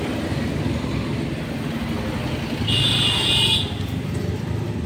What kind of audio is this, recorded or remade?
recorded